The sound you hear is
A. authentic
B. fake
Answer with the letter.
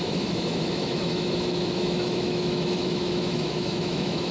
B